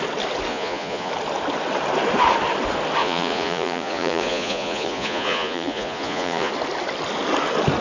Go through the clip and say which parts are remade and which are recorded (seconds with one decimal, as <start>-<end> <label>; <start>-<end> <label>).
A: 0.0-0.5 recorded; 0.5-1.1 remade; 1.1-3.0 recorded; 3.0-6.5 remade; 6.5-7.8 recorded